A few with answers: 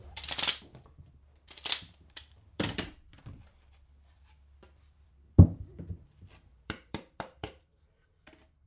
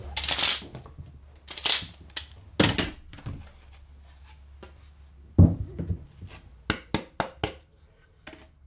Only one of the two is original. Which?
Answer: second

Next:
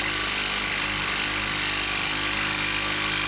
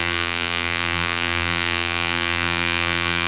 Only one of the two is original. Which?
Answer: first